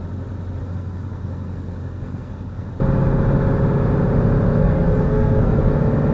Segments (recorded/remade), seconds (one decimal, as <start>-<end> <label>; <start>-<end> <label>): 0.0-0.6 recorded; 0.6-2.7 remade; 2.7-4.6 recorded; 4.6-5.6 remade; 5.6-6.1 recorded